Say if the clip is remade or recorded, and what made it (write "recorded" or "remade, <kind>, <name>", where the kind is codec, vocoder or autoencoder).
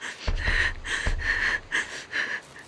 recorded